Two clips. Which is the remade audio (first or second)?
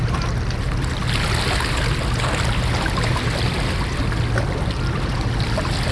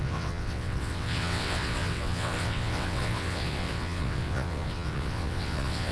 second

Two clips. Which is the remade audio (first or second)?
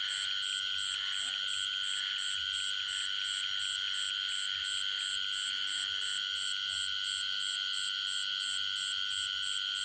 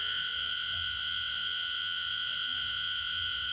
second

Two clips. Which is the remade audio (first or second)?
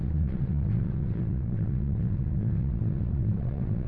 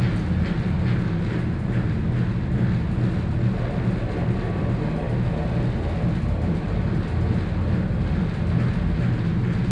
first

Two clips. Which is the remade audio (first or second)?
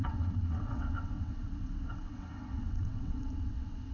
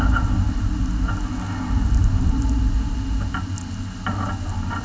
first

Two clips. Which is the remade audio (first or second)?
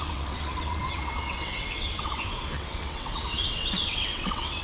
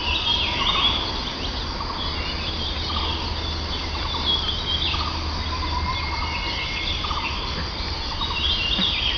first